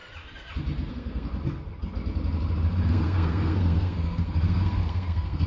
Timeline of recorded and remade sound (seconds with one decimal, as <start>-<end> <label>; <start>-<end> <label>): 0.0-0.9 recorded; 0.9-1.3 remade; 1.3-2.9 recorded; 2.9-5.5 remade